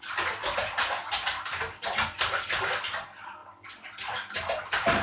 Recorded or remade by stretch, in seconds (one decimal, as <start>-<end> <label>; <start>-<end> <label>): 0.0-5.0 recorded